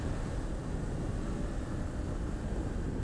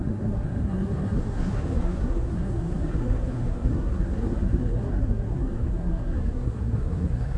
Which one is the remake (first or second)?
second